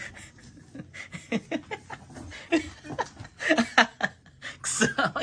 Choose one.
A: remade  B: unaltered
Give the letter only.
B